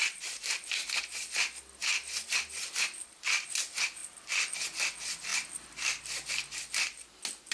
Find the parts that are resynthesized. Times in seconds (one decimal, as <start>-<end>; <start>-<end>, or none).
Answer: 0.0-1.0; 1.9-3.6; 4.0-4.5; 5.3-6.3